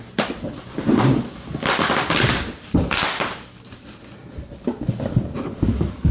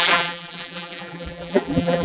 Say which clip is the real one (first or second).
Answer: first